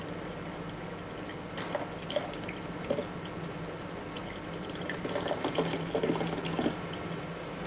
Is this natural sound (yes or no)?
yes